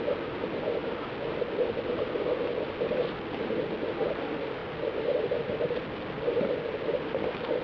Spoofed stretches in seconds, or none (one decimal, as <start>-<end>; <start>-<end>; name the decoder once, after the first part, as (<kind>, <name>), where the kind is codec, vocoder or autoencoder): none